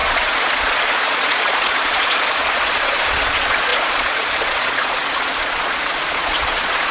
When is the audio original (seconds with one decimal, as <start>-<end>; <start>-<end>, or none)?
none